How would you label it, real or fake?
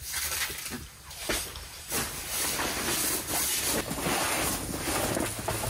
real